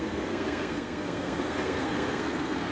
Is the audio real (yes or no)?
no